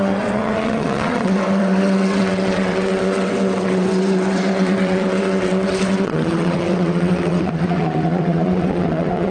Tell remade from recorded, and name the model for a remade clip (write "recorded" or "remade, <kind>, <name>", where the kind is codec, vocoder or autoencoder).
remade, vocoder, WaveNeXt